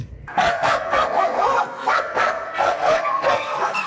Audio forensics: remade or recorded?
remade